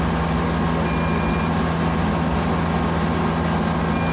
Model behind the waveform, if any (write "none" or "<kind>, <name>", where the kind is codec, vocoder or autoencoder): none